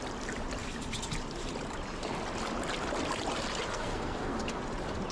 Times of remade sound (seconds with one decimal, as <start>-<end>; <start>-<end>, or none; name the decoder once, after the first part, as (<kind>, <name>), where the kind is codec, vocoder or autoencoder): 3.7-4.6 (codec, SNAC)